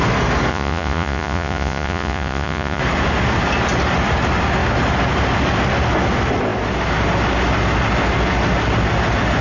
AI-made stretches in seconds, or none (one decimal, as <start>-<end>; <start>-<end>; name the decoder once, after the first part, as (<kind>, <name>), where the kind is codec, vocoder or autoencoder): 0.5-2.8 (vocoder, Vocos)